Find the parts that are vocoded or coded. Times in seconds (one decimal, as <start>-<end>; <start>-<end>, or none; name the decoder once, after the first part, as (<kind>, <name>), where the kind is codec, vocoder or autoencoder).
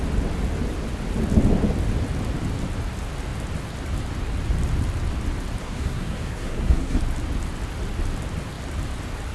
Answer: 5.6-7.0 (codec, SNAC)